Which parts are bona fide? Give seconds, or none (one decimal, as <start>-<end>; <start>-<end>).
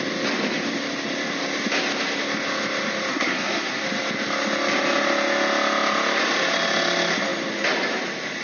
0.0-3.1; 3.8-8.4